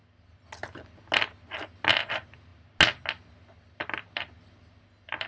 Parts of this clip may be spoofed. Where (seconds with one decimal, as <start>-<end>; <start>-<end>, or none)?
2.1-2.5; 3.3-5.3

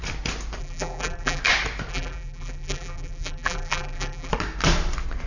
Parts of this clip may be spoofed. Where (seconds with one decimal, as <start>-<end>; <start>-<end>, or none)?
0.6-1.4; 1.9-4.3

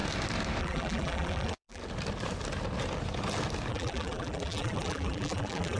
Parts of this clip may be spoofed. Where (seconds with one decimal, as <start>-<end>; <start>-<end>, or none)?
0.6-1.8; 3.7-5.8